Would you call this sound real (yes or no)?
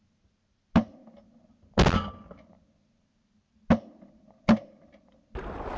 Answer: yes